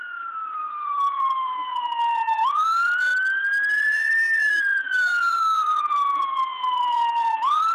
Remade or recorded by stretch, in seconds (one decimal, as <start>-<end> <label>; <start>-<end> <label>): 0.0-3.1 remade; 3.1-3.7 recorded; 3.7-7.7 remade